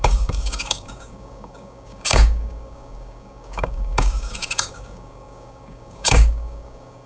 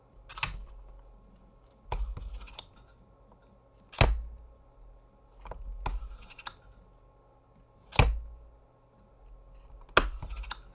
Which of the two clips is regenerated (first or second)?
first